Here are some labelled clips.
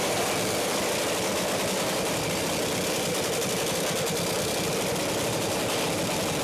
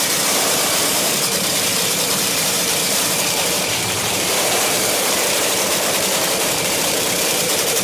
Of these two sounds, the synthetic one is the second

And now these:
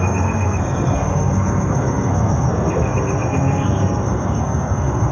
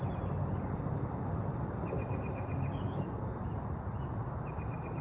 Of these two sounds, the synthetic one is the first